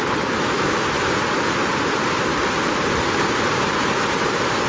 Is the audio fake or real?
real